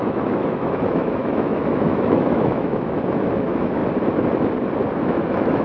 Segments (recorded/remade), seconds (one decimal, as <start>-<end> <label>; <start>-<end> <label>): 0.0-3.8 remade; 3.8-5.0 recorded; 5.0-5.6 remade